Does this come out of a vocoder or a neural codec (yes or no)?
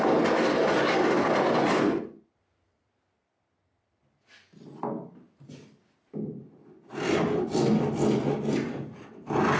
no